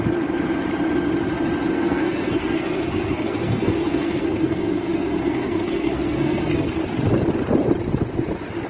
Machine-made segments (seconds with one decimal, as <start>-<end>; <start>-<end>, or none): 1.7-6.7